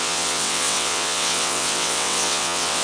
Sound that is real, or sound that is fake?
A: fake